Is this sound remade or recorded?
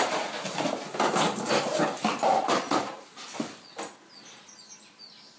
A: recorded